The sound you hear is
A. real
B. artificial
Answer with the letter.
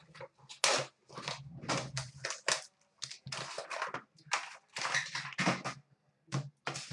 A